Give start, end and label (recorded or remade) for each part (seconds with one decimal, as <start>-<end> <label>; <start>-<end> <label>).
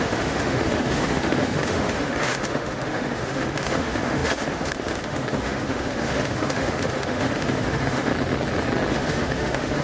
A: 0.0-8.1 remade; 8.1-8.9 recorded; 8.9-9.8 remade